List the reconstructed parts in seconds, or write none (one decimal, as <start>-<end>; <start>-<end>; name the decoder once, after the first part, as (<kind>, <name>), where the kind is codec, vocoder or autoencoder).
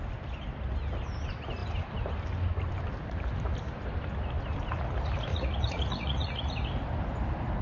5.3-6.5 (vocoder, Vocos)